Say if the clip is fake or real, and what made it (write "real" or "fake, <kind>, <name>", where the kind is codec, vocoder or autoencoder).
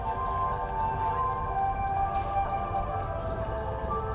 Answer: real